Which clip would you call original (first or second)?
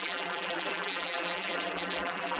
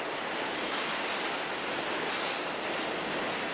second